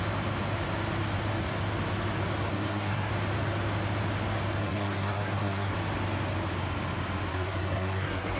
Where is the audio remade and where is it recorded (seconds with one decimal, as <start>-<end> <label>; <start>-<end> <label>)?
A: 0.0-2.5 recorded; 2.5-3.1 remade; 3.1-4.6 recorded; 4.6-5.7 remade; 5.7-7.3 recorded; 7.3-8.4 remade